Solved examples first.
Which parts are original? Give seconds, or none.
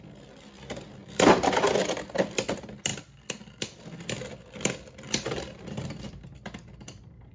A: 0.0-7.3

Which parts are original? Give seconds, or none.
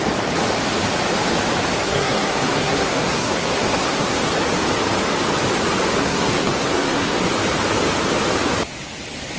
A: 0.0-1.8; 4.3-6.0; 7.2-9.4